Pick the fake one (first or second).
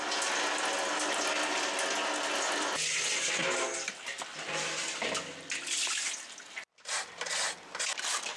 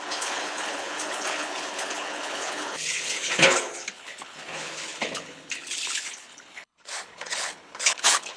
second